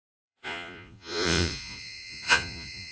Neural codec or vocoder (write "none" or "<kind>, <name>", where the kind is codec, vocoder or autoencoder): vocoder, Vocos